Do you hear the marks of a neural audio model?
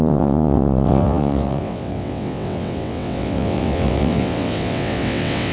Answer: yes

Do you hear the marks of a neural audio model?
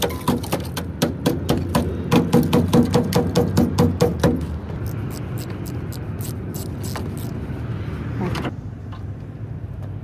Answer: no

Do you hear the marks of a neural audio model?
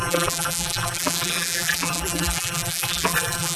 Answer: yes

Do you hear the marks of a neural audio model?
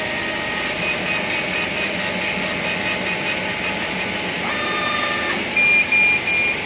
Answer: no